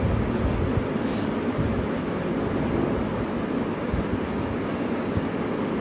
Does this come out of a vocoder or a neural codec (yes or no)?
no